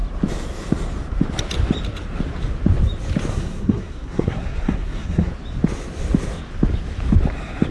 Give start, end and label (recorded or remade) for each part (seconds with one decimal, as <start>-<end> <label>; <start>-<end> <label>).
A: 0.0-3.3 recorded; 3.3-5.3 remade; 5.3-7.7 recorded